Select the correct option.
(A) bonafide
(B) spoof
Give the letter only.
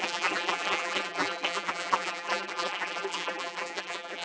B